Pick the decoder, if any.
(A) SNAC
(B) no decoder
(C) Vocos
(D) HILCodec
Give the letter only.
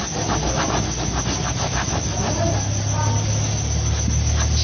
B